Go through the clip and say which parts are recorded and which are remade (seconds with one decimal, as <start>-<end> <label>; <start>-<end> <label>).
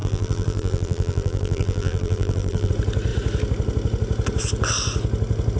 0.0-2.7 remade; 2.7-5.6 recorded